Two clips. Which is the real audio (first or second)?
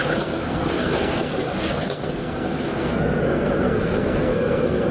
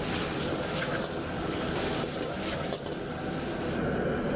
second